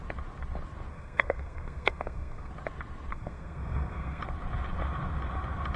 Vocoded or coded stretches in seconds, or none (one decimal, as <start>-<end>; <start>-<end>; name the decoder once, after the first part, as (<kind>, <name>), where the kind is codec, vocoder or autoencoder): 0.9-2.5 (codec, SNAC); 3.1-4.2